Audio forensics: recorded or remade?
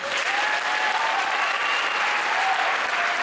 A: recorded